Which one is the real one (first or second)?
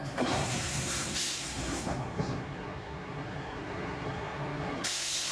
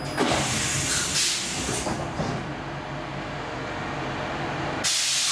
second